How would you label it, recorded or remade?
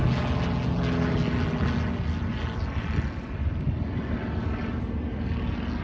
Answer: recorded